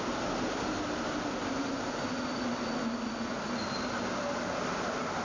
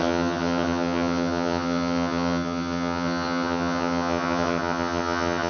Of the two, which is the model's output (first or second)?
second